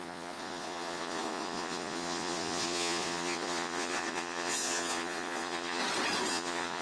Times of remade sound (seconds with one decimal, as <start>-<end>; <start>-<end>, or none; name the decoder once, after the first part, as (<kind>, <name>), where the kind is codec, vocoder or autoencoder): 0.0-5.8 (vocoder, Vocos); 6.3-6.8